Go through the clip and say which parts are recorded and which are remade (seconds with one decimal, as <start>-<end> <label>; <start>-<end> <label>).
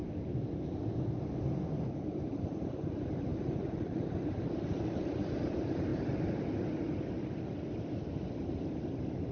0.0-0.7 recorded; 0.7-5.9 remade; 5.9-9.3 recorded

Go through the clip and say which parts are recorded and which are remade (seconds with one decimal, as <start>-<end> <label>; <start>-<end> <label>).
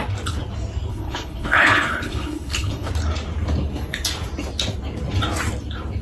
0.0-0.9 recorded; 0.9-2.9 remade; 2.9-6.0 recorded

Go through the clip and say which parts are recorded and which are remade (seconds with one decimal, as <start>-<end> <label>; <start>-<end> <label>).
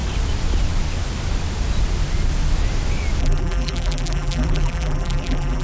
0.0-3.2 recorded; 3.2-5.6 remade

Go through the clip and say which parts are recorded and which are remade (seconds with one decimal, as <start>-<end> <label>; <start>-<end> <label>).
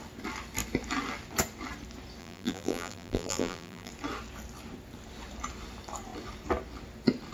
0.0-2.2 recorded; 2.2-3.9 remade; 3.9-7.3 recorded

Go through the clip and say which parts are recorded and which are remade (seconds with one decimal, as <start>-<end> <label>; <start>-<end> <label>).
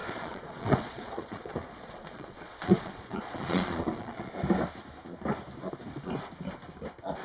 0.0-4.3 remade; 4.3-7.2 recorded